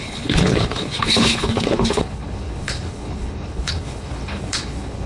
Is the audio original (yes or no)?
no